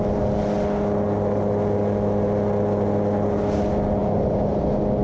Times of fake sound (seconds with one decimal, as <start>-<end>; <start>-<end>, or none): none